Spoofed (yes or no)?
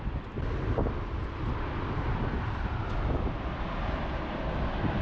no